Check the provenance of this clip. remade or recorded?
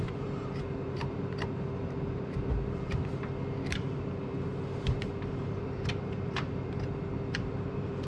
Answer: remade